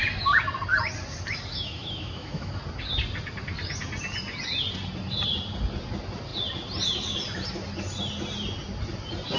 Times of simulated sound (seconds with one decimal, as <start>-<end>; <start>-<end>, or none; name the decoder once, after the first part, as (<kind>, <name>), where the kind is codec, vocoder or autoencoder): 1.5-2.6 (autoencoder, DAC-VAE)